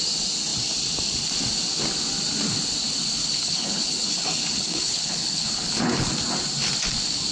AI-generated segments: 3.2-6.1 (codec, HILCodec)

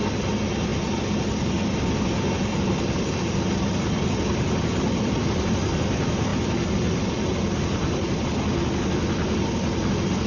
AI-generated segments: none

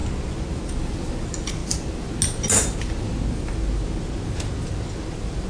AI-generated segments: none